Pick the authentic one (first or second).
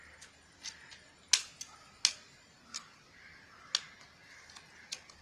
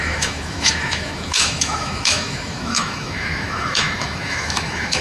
first